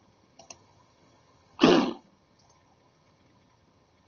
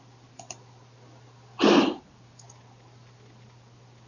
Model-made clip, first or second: first